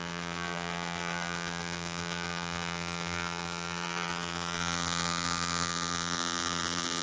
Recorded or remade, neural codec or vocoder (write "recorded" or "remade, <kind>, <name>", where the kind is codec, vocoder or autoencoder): remade, vocoder, BigVGAN v2